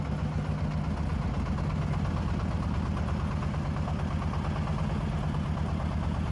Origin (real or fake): real